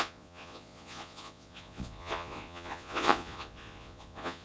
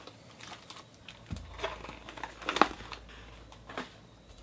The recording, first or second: second